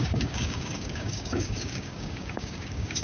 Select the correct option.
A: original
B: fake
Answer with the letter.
B